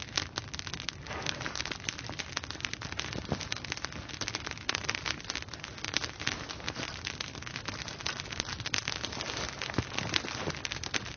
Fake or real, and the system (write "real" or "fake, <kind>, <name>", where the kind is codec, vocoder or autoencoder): real